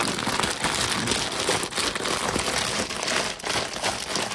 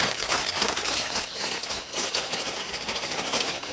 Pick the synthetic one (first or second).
second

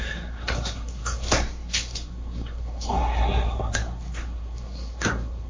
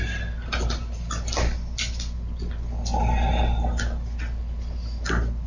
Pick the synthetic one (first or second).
first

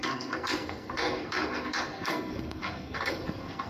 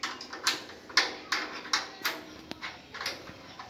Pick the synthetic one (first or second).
first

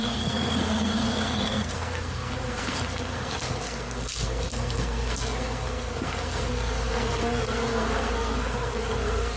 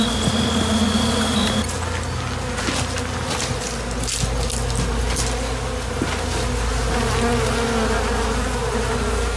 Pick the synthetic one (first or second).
first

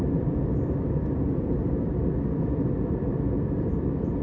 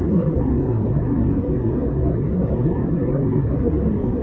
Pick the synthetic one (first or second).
second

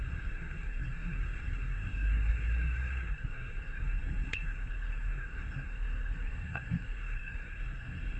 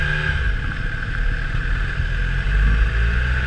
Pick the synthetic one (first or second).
first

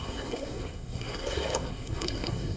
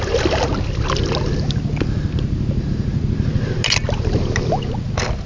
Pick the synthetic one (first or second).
first